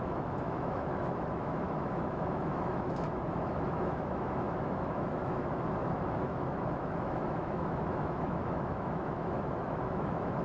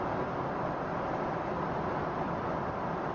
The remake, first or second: first